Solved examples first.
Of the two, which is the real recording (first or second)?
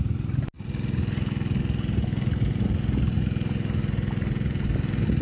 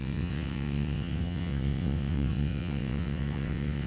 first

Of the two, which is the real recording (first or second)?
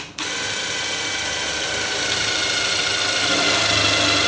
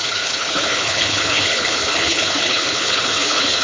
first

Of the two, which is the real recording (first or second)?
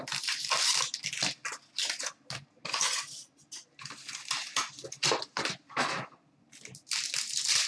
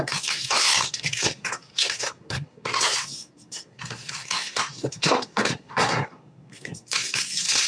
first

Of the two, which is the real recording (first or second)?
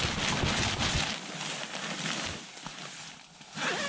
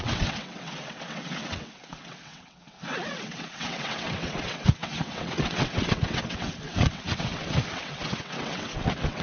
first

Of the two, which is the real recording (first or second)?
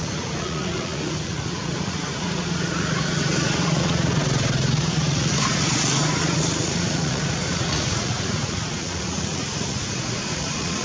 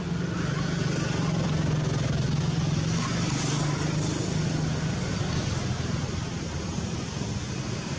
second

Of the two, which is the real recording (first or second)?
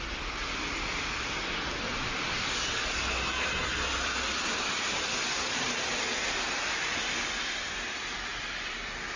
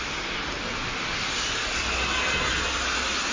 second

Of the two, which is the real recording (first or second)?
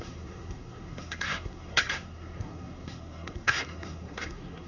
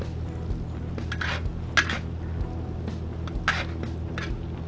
second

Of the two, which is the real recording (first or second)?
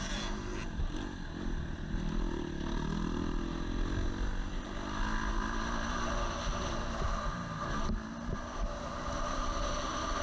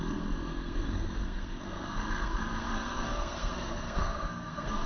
first